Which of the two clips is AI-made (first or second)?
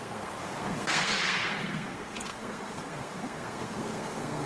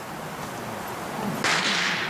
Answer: first